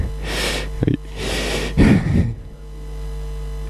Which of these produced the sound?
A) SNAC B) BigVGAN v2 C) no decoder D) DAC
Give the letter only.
C